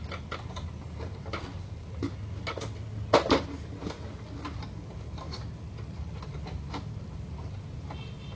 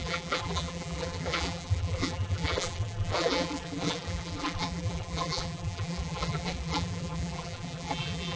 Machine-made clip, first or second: second